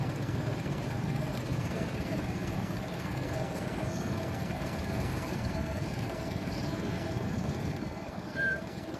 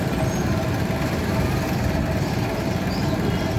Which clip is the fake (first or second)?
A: first